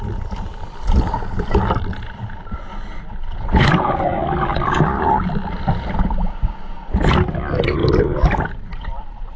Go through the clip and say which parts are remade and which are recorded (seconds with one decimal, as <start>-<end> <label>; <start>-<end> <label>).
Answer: 0.0-4.5 recorded; 4.5-7.1 remade; 7.1-7.8 recorded; 7.8-8.5 remade; 8.5-9.4 recorded